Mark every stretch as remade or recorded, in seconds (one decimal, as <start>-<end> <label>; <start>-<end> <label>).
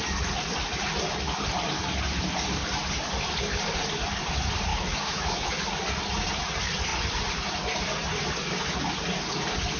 0.0-4.7 recorded; 4.7-5.5 remade; 5.5-9.8 recorded